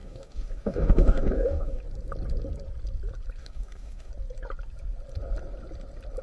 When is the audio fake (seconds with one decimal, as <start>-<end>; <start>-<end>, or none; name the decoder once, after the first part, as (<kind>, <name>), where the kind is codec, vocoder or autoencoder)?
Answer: 0.0-1.8 (codec, DAC); 3.4-4.1